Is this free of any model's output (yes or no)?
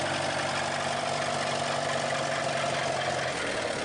yes